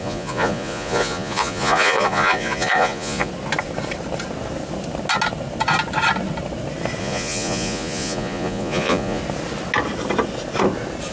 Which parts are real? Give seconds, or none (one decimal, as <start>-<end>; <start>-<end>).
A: 3.3-7.0; 9.2-11.1